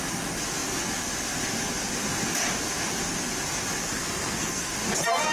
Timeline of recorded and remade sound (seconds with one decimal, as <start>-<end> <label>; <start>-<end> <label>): 0.0-3.8 recorded; 3.8-4.7 remade; 4.7-5.3 recorded